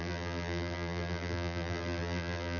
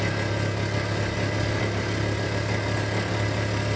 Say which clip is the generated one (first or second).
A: first